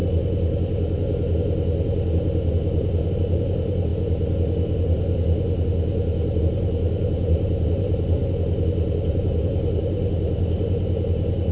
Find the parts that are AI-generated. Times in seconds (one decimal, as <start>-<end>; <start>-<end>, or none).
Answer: 3.1-3.9; 6.4-8.2; 9.1-11.5